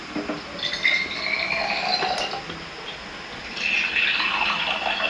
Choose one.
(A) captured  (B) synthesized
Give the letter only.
A